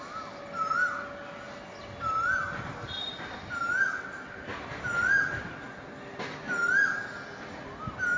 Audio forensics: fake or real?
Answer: real